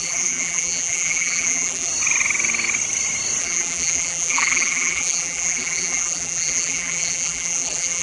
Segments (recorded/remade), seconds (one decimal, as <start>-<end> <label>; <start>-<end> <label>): 0.0-1.9 remade; 1.9-3.4 recorded; 3.4-8.0 remade